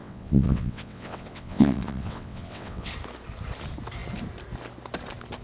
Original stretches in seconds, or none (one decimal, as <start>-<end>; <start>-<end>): 2.9-5.4